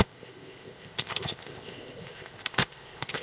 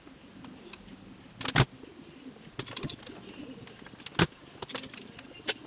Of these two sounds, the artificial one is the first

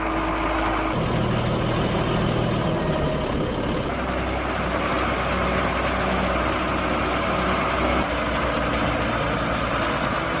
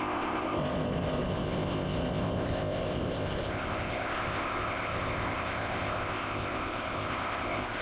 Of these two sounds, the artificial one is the second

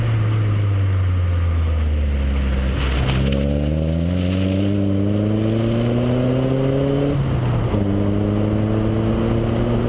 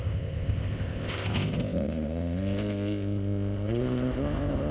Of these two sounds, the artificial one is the second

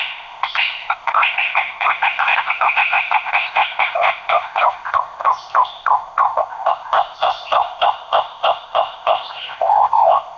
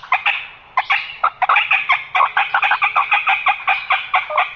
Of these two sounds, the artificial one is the first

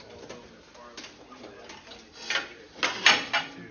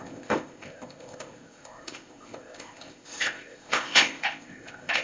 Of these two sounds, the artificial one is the second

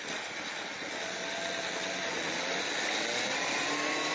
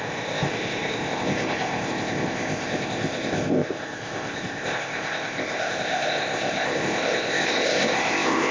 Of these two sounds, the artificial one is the second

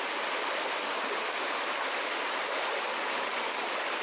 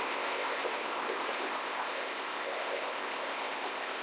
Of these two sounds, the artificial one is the second